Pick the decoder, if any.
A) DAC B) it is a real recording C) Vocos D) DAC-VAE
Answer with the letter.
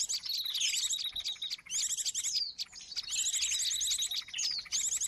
B